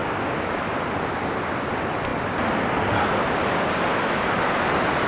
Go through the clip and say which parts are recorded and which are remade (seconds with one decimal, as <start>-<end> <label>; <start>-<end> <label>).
0.0-5.1 recorded